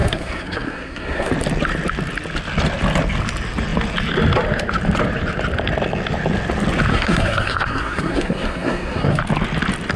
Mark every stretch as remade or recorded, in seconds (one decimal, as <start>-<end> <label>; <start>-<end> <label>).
0.0-1.3 remade; 1.3-6.9 recorded; 6.9-9.2 remade; 9.2-10.0 recorded